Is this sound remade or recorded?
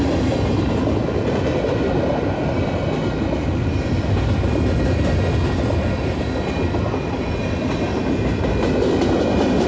recorded